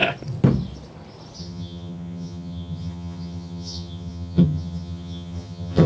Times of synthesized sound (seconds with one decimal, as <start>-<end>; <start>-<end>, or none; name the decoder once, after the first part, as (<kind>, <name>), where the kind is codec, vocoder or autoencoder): 1.4-5.9 (vocoder, HiFi-GAN)